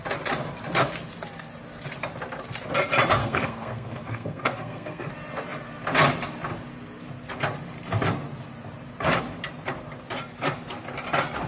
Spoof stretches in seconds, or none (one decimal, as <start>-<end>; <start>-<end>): 3.2-5.1